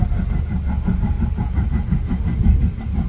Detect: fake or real real